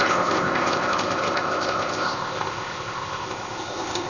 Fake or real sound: fake